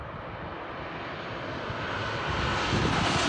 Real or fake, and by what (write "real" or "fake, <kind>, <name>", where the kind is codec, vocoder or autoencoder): real